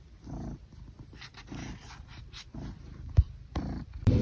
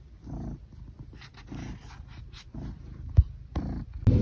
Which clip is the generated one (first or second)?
first